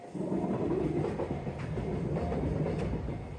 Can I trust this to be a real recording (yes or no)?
yes